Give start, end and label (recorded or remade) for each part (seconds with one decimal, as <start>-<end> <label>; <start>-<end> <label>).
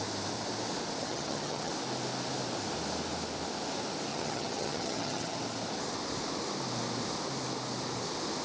0.0-1.0 recorded; 1.0-1.7 remade; 1.7-4.1 recorded; 4.1-5.4 remade; 5.4-8.4 recorded